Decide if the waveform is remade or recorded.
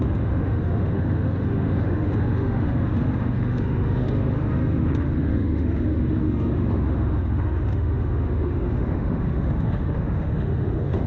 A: remade